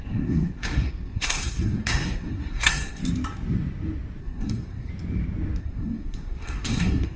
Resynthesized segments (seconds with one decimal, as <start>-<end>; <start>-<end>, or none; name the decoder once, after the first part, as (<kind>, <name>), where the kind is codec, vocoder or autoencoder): 0.0-3.0 (codec, SNAC); 4.2-4.9; 5.6-7.2